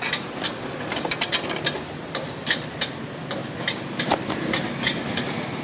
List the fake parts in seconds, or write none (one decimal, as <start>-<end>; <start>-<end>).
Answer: none